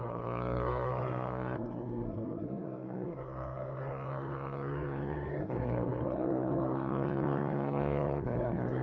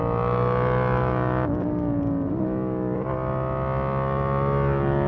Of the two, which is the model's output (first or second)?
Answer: first